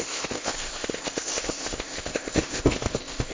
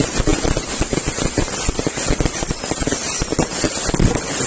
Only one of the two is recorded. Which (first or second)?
second